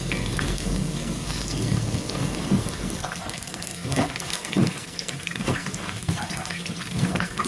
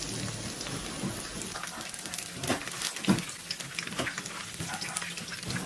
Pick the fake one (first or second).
first